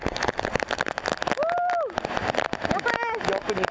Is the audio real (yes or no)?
yes